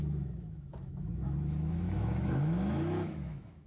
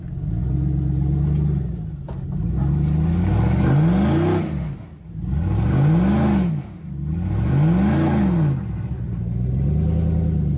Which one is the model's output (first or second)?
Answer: first